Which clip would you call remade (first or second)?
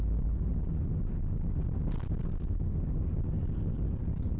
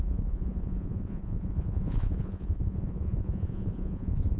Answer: second